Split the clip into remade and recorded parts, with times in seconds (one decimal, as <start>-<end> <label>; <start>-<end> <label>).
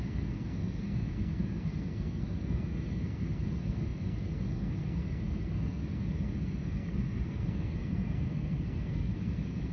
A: 0.0-9.7 remade